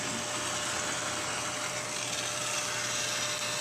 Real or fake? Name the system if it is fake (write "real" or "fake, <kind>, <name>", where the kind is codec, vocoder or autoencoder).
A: real